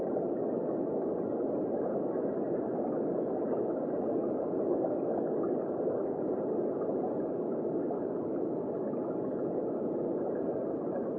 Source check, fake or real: real